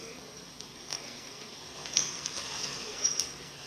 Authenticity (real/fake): fake